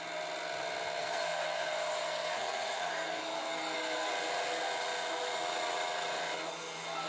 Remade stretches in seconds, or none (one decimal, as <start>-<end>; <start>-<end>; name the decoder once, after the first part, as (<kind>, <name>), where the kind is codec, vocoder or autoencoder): 1.0-4.1 (codec, SNAC)